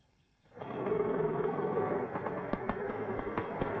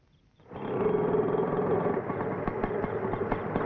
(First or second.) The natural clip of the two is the second